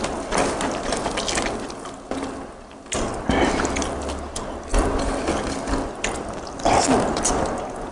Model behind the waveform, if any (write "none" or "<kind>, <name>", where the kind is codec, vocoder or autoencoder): none